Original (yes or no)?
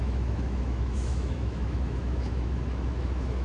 no